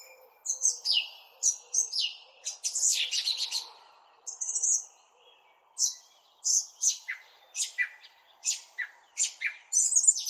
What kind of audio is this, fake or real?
real